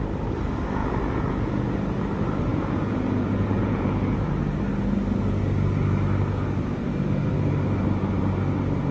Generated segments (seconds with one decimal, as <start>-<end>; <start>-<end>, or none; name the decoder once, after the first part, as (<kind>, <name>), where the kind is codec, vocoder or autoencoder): 0.8-1.5 (vocoder, Vocos); 2.5-4.4